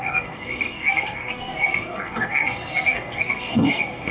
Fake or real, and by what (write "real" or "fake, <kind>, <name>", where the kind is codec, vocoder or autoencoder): fake, codec, SNAC